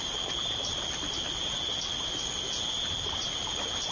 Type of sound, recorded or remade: recorded